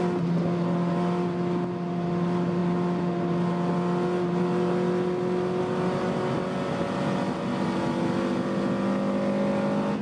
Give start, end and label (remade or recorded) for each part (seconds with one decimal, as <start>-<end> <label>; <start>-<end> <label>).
0.0-10.0 recorded